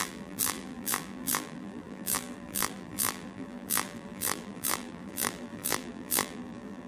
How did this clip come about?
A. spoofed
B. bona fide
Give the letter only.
A